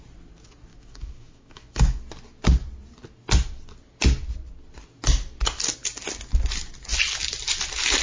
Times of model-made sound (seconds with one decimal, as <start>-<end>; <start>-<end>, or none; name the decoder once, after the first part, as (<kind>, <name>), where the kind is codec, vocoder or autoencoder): 0.7-2.0 (autoencoder, DAC-VAE)

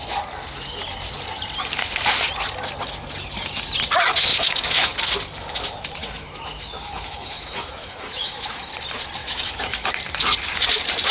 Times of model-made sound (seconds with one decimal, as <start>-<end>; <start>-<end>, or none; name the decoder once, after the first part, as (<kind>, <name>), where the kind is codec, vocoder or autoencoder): 4.3-4.9 (autoencoder, DAC-VAE); 6.0-8.7; 9.2-9.9

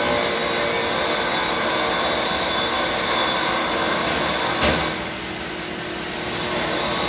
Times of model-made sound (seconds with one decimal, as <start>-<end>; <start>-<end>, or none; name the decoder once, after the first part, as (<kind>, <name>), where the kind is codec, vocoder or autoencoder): none

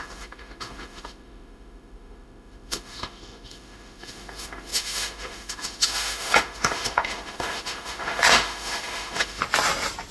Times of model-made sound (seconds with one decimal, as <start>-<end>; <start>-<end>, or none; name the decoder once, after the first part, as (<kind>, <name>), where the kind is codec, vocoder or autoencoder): 0.0-9.4 (autoencoder, DAC-VAE)

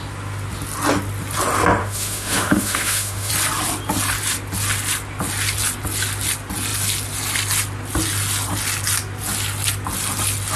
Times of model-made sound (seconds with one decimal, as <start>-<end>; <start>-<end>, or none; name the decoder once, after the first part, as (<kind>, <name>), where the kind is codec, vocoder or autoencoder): 1.8-3.3 (autoencoder, DAC-VAE)

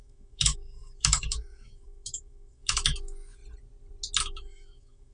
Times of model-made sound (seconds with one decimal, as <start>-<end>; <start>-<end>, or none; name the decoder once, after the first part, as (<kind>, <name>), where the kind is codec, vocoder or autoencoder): 0.0-3.4 (autoencoder, DAC-VAE); 4.2-5.1